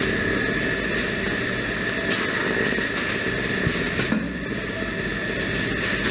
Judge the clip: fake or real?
real